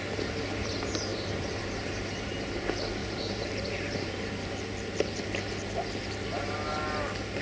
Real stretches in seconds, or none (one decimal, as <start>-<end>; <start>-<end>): 0.0-1.1; 2.5-3.0; 4.5-7.4